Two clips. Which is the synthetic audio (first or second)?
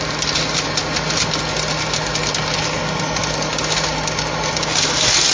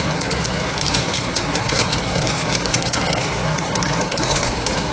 second